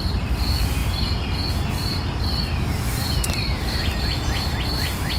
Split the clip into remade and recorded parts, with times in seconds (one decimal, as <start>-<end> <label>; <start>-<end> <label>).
0.0-2.4 recorded; 2.4-3.8 remade; 3.8-5.2 recorded